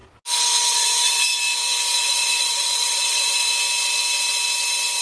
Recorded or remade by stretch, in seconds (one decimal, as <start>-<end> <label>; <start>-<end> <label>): 0.0-0.7 recorded; 0.7-1.3 remade; 1.3-2.0 recorded; 2.0-3.5 remade; 3.5-5.0 recorded